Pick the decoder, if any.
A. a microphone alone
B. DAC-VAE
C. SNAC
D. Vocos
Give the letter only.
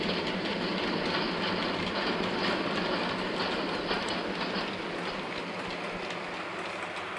A